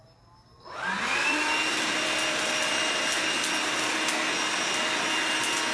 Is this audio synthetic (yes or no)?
no